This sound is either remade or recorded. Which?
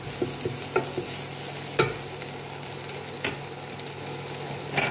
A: recorded